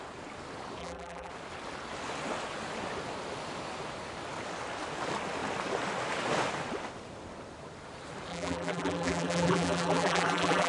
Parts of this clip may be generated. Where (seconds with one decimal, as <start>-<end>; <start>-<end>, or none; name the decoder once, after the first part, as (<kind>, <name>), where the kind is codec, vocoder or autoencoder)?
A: 0.8-1.3 (vocoder, BigVGAN v2); 8.3-10.7